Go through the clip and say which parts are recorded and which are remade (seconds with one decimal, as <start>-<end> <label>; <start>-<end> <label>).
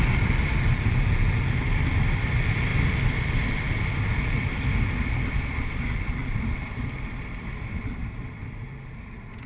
0.0-9.5 recorded